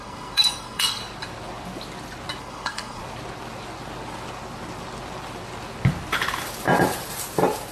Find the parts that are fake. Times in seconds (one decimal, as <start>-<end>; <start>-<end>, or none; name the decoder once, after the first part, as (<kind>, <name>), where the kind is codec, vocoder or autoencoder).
0.0-1.0 (codec, SNAC); 2.4-3.0